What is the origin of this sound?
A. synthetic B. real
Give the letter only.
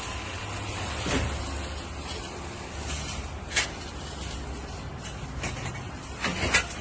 B